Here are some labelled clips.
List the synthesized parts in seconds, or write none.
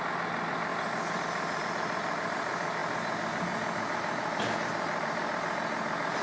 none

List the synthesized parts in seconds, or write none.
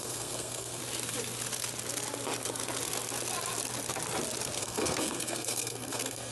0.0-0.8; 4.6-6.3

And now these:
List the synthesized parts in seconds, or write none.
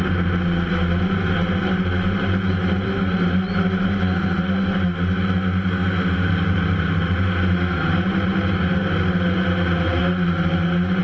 none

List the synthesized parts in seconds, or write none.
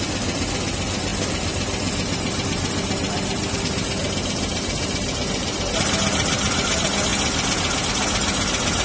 none